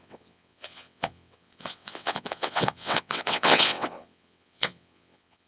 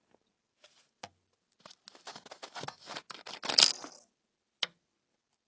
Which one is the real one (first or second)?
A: second